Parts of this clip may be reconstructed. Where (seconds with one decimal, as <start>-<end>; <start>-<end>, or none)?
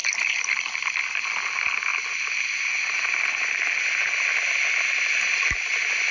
none